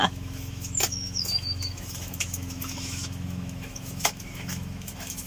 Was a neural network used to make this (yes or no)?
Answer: yes